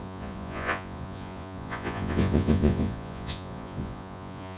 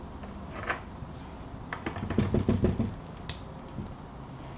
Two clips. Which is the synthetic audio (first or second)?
first